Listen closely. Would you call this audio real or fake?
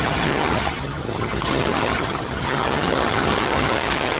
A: fake